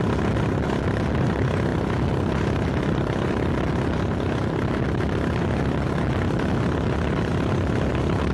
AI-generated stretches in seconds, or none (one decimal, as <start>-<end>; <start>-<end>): none